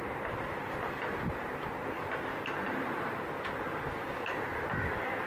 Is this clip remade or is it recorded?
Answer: recorded